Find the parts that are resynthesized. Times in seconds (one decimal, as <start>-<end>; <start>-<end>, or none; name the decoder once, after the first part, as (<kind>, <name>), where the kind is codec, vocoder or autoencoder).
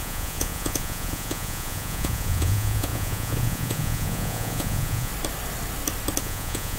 0.0-5.1 (vocoder, Vocos); 6.2-6.8